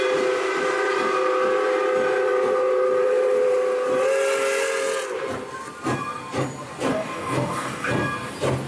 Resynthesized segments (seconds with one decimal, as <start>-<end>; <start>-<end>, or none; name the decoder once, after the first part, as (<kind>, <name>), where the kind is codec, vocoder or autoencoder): 6.9-7.9 (codec, DAC)